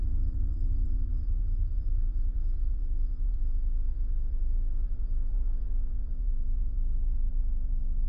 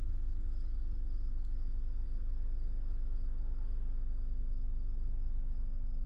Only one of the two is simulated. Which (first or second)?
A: first